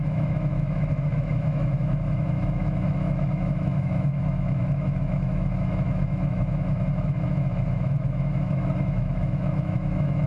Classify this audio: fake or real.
fake